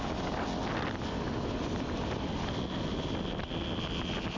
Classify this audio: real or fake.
real